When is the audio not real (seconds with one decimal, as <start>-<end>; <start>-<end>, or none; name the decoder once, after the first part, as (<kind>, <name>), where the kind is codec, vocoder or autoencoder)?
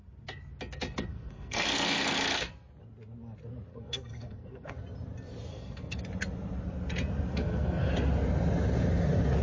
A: 1.1-2.5 (codec, SNAC); 3.7-4.7; 5.5-6.0; 7.3-7.9